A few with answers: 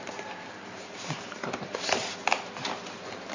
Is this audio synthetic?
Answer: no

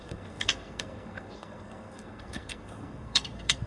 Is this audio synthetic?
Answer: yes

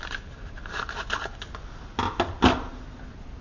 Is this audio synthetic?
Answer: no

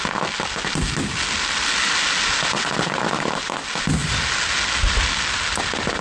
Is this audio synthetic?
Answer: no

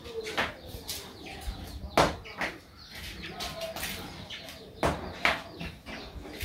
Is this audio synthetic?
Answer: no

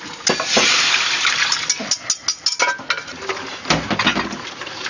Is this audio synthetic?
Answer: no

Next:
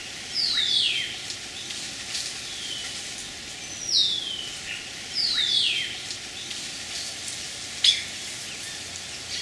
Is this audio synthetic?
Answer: no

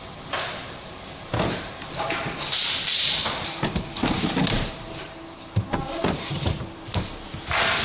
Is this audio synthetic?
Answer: yes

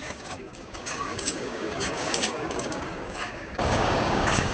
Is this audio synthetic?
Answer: yes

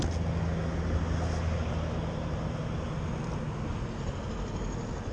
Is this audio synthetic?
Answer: no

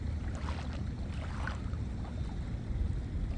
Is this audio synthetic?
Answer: no